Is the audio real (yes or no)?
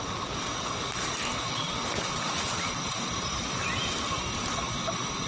yes